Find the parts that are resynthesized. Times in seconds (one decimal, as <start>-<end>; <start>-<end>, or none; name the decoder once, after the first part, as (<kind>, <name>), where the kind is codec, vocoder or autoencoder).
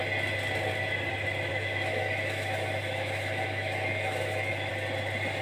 1.5-4.7 (autoencoder, DAC-VAE)